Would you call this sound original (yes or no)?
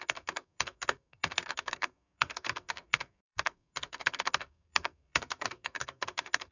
no